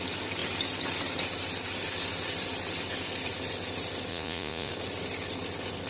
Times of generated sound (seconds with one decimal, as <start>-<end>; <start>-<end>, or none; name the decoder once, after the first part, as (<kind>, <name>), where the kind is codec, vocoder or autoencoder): 4.1-4.7 (vocoder, Vocos)